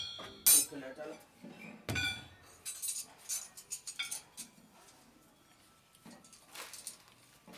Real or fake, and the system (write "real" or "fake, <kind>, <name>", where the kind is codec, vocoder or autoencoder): real